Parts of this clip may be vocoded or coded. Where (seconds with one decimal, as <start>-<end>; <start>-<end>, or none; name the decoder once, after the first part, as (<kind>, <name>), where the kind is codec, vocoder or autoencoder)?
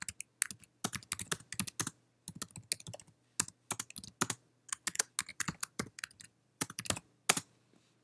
5.3-6.8 (vocoder, BigVGAN v2)